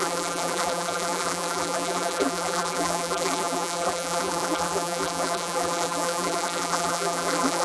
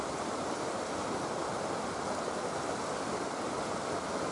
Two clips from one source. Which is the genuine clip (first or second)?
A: second